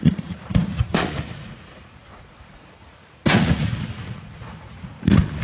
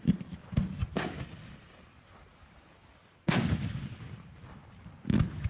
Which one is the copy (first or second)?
first